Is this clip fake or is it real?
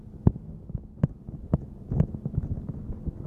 real